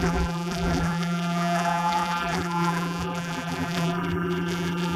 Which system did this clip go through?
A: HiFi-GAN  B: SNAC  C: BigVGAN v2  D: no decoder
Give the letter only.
C